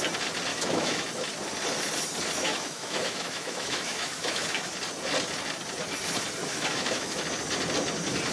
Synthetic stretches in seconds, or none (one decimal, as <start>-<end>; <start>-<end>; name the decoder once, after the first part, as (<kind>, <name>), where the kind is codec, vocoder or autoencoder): 0.5-1.1 (autoencoder, DAC-VAE); 2.4-4.7; 6.5-7.2